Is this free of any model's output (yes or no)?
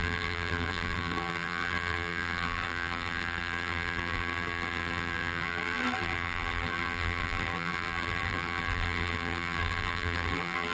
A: no